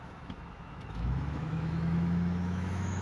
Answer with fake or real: fake